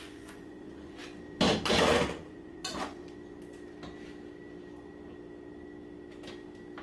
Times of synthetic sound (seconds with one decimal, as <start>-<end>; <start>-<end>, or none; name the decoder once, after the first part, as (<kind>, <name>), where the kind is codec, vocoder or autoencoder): 0.0-1.0 (vocoder, Vocos); 1.7-3.0